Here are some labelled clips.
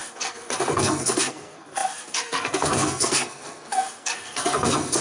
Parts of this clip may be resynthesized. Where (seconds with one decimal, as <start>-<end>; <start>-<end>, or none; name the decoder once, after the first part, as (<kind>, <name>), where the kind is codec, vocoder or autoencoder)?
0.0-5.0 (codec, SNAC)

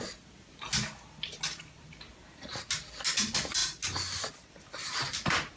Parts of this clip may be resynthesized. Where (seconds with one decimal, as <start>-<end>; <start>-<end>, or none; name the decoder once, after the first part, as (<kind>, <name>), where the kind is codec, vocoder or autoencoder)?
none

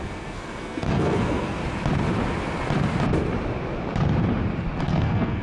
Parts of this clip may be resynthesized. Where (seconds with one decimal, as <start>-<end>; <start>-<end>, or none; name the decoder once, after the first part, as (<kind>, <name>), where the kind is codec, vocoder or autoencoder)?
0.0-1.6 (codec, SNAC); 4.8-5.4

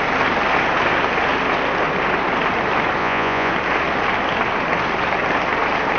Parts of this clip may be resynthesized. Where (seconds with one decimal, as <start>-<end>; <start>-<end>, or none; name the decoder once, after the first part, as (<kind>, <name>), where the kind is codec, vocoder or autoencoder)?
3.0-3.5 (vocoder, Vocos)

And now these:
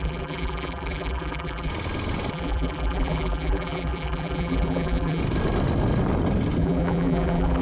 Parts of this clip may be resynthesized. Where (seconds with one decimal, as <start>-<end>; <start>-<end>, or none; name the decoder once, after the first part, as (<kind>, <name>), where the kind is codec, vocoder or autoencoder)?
0.0-1.7 (vocoder, BigVGAN v2); 2.3-5.2; 6.6-7.6

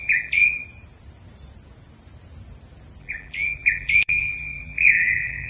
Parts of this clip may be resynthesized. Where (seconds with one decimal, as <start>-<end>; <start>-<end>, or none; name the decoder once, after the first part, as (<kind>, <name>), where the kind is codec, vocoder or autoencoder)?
0.0-0.6 (vocoder, BigVGAN v2); 3.0-5.5